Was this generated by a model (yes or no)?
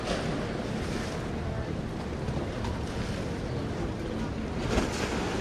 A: no